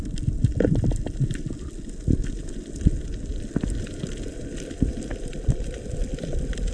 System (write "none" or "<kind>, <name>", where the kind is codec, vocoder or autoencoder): none